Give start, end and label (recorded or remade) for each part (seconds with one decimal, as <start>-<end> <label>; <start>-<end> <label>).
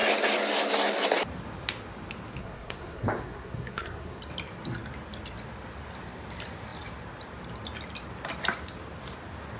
0.0-2.4 recorded; 2.4-4.2 remade; 4.2-9.6 recorded